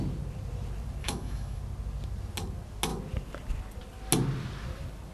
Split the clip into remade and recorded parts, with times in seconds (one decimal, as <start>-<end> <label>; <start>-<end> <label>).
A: 0.0-1.0 recorded; 1.0-1.6 remade; 1.6-5.1 recorded